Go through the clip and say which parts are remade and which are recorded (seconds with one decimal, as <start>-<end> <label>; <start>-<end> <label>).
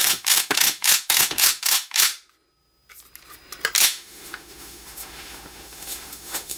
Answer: 0.0-2.1 remade; 2.1-3.8 recorded; 3.8-6.6 remade